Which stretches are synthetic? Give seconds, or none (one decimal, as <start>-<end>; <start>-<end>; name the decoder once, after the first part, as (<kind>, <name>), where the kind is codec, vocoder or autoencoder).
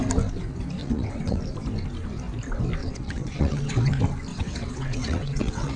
0.8-1.4 (vocoder, WaveNeXt); 2.8-3.9; 4.3-5.8